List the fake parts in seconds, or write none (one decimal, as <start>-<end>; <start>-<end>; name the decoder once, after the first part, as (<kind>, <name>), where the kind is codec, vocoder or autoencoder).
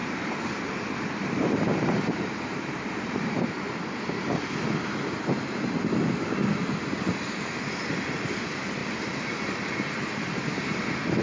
0.0-3.9 (vocoder, BigVGAN v2)